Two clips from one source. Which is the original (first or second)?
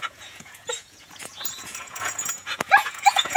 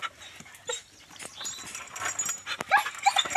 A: second